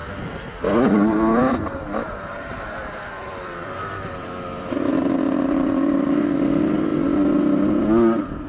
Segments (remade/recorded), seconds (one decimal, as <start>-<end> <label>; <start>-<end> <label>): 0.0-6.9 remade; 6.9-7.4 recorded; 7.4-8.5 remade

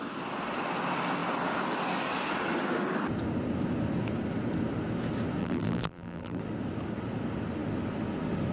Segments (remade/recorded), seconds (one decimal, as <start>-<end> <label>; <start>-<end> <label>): 0.0-5.4 recorded; 5.4-6.4 remade; 6.4-8.5 recorded

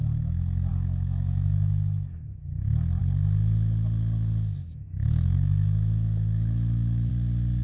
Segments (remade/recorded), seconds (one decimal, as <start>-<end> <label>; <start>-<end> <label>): 0.0-0.7 recorded; 0.7-3.0 remade; 3.0-4.6 recorded; 4.6-7.1 remade; 7.1-7.6 recorded